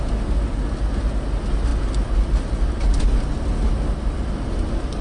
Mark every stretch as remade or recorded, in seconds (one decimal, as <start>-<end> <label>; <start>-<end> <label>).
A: 0.0-5.0 recorded